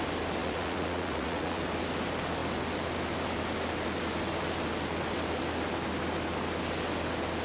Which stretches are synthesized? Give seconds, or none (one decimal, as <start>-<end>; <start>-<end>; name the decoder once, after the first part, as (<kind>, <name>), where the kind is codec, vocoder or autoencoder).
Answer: 0.4-1.6 (vocoder, Vocos)